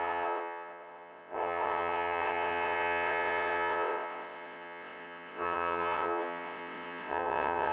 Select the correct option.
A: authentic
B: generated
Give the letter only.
B